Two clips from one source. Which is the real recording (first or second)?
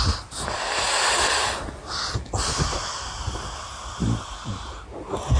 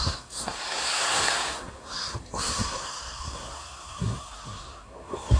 first